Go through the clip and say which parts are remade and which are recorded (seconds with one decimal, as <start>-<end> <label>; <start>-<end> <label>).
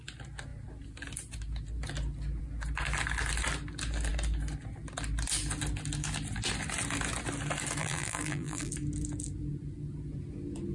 0.0-7.8 recorded; 7.8-8.7 remade; 8.7-10.7 recorded